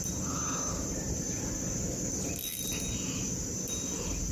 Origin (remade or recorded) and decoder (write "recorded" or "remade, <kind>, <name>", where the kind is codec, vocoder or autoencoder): recorded